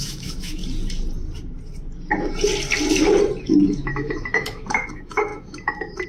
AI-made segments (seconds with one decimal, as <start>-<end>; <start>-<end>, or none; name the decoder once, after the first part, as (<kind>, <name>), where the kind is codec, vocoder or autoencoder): 0.0-0.6 (autoencoder, DAC-VAE); 3.4-6.1